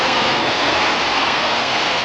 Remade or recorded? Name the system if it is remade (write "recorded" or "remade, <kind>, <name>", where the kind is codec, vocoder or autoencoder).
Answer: remade, codec, SNAC